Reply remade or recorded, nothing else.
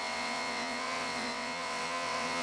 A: remade